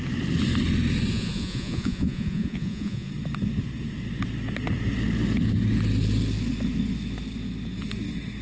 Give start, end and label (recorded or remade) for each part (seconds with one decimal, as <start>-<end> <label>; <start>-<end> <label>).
0.0-1.1 recorded; 1.1-3.1 remade; 3.1-8.4 recorded